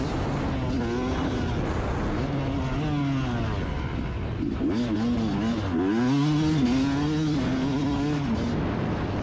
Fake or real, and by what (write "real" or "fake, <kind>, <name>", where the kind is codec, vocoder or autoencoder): real